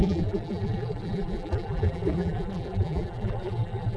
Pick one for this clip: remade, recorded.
remade